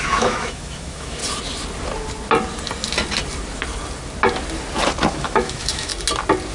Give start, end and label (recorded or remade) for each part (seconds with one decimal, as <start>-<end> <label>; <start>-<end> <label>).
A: 0.0-1.2 remade; 1.2-5.1 recorded; 5.1-5.9 remade; 5.9-6.5 recorded